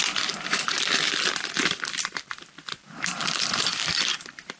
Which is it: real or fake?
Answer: fake